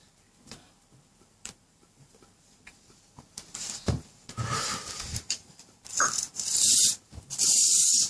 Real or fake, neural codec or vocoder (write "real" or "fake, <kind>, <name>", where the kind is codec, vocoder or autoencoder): fake, vocoder, BigVGAN v2